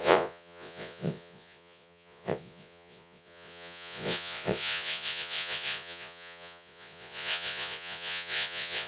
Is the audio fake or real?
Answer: fake